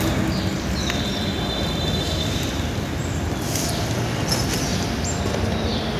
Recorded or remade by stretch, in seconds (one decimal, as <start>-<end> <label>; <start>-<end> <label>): 0.0-6.0 remade